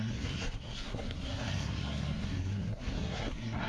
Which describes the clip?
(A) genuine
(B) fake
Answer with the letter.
B